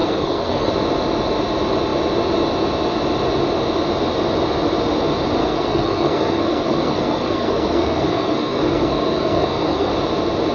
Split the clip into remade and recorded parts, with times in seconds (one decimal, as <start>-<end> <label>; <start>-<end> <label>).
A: 0.0-0.7 remade; 0.7-5.4 recorded; 5.4-9.9 remade; 9.9-10.5 recorded